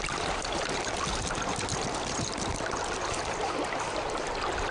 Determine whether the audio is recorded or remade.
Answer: recorded